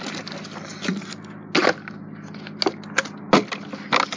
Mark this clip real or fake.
real